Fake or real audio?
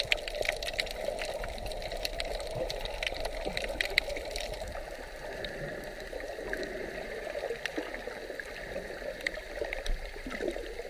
real